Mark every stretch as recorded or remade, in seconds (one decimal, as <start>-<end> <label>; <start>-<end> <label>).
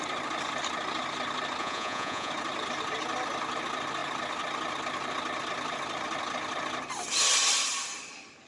0.0-1.6 recorded; 1.6-2.3 remade; 2.3-8.5 recorded